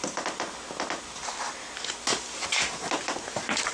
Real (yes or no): yes